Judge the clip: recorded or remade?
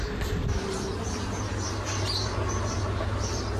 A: recorded